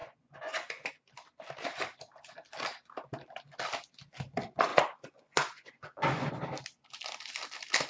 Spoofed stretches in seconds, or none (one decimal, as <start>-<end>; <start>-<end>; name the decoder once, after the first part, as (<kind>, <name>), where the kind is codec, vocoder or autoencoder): 0.0-0.9 (vocoder, Vocos); 4.7-6.3